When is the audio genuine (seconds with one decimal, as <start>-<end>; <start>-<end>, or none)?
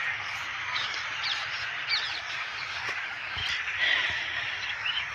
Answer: 1.0-2.3; 3.4-4.1